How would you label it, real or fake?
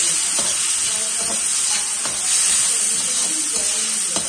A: real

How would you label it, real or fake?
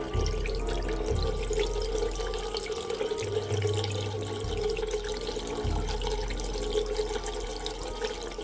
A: real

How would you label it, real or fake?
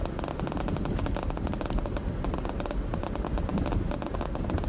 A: real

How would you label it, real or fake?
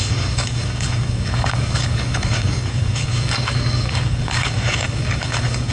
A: fake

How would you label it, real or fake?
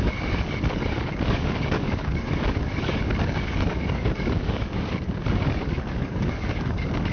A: fake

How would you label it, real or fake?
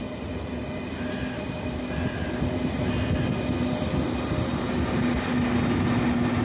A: real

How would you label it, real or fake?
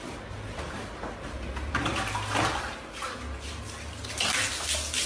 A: real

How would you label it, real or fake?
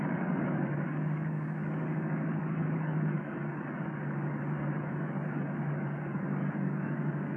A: fake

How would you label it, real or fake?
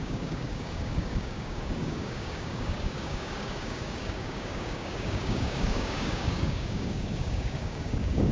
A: fake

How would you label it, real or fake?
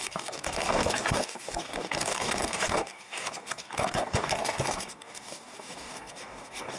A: fake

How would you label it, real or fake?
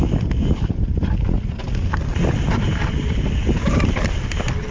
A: real